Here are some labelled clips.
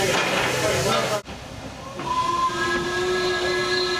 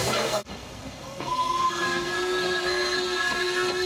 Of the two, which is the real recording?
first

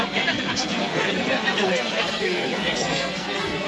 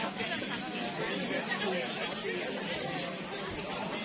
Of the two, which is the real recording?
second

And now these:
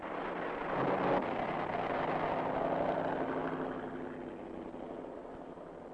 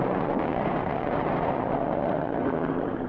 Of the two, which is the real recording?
first